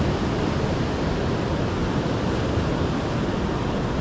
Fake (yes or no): no